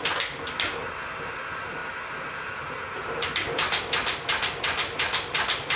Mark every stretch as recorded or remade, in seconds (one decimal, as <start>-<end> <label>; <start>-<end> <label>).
0.0-5.8 recorded